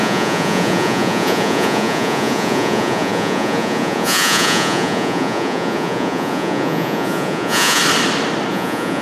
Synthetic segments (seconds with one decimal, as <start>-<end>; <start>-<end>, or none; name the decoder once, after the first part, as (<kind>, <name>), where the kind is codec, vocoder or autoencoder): 0.0-7.8 (vocoder, Vocos); 8.5-9.0